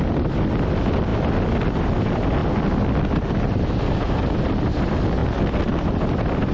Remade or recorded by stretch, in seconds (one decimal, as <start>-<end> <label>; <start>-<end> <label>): 0.0-6.5 recorded